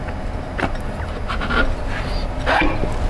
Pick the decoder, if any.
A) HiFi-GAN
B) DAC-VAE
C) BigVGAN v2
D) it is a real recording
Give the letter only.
D